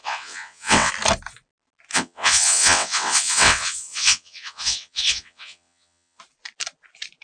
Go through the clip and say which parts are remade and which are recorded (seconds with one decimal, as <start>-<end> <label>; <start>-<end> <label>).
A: 0.0-0.9 remade; 0.9-1.9 recorded; 1.9-6.2 remade; 6.2-7.2 recorded